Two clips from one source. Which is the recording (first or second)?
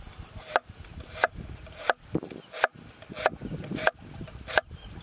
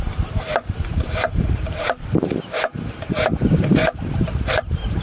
first